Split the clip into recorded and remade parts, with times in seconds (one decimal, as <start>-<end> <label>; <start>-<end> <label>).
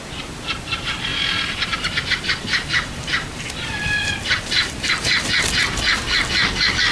0.0-1.1 recorded; 1.1-2.7 remade; 2.7-6.9 recorded